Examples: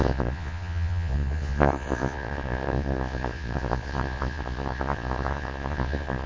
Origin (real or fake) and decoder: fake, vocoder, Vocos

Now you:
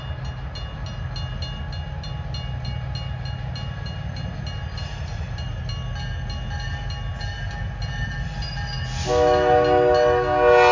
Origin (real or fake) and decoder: real